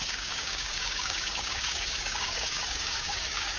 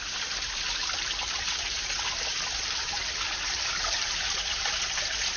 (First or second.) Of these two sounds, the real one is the second